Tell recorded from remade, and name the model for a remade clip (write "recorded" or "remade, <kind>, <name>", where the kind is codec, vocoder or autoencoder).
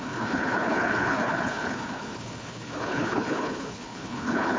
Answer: remade, codec, HILCodec